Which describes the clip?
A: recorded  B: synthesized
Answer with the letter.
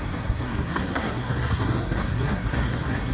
B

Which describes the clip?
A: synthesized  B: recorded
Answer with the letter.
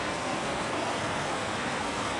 A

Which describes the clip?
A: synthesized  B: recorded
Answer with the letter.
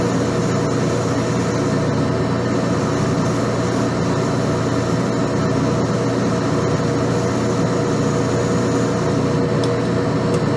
B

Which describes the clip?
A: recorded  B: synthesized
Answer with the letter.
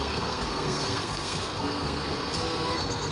B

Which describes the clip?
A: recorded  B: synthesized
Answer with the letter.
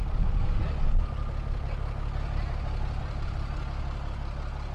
A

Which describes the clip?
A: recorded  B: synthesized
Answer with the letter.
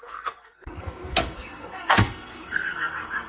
B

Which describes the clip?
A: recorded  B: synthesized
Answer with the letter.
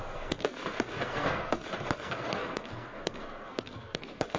B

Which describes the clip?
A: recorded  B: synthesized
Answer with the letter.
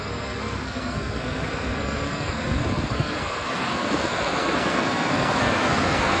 B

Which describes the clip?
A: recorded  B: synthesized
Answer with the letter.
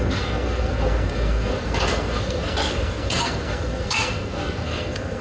B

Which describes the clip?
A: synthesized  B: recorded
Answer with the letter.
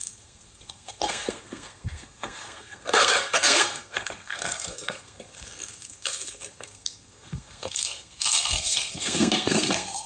A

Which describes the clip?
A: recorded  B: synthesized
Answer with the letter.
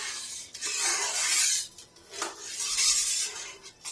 A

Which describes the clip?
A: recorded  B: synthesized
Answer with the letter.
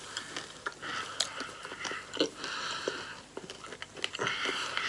A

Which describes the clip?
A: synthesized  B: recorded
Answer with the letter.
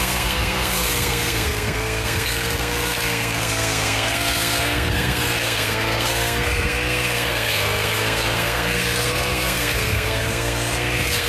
A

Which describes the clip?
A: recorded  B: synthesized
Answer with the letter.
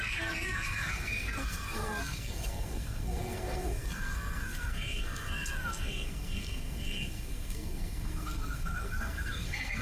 B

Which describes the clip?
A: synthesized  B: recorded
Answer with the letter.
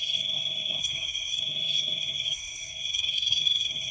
A